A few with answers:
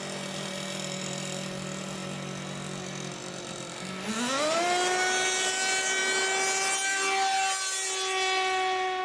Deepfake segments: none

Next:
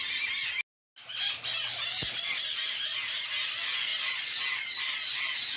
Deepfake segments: none

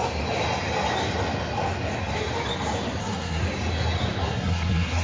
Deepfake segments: 3.0-3.4 (codec, SNAC); 4.2-5.0

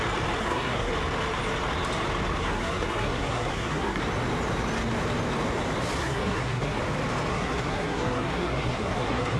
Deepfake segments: 0.4-0.9 (codec, SNAC); 2.4-4.0; 6.0-6.8; 7.3-9.4